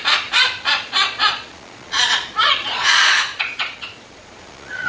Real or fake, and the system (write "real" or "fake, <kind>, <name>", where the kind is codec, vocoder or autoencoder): fake, vocoder, Vocos